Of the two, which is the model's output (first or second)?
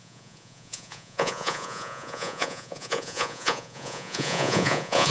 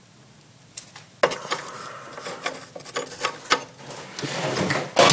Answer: first